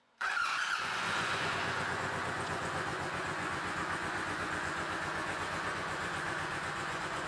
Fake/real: fake